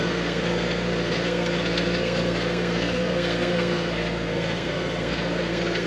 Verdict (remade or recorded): remade